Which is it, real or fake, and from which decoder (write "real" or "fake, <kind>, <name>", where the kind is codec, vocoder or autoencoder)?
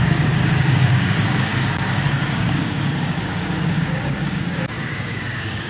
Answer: fake, codec, DAC